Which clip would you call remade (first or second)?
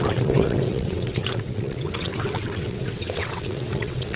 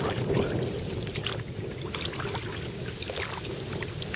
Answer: first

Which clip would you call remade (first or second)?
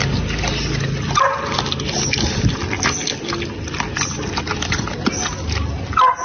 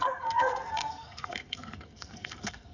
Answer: second